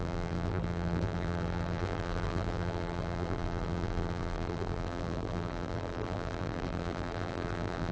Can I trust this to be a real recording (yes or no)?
no